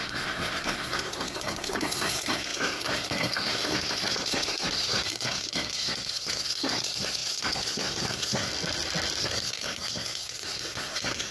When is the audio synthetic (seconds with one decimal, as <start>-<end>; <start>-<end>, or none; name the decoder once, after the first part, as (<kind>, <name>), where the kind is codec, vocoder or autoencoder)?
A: 0.0-8.5 (codec, SNAC); 9.2-11.3